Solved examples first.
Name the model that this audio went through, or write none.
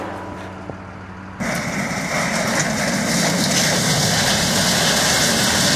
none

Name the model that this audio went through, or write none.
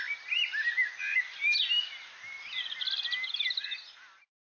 none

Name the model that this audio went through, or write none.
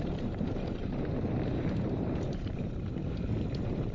vocoder, BigVGAN v2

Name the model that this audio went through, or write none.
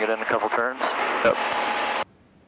none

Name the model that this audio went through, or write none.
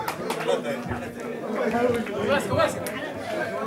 none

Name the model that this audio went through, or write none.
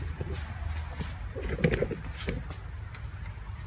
none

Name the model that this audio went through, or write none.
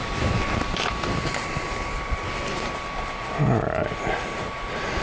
none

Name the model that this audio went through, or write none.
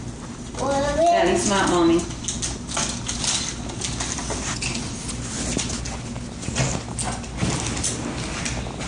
none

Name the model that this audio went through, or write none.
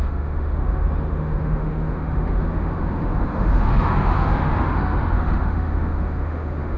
autoencoder, DAC-VAE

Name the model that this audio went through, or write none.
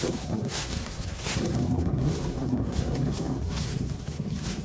codec, SNAC